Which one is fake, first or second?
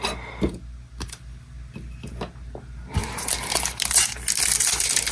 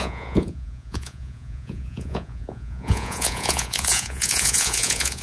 second